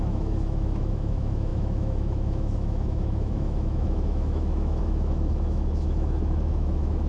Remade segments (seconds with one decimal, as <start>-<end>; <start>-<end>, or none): 0.0-7.1